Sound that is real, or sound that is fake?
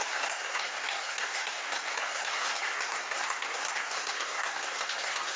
fake